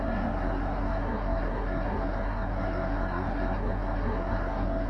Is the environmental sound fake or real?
fake